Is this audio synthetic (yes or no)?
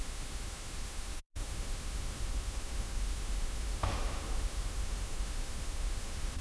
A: yes